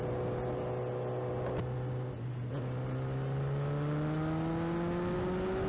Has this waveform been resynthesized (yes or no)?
no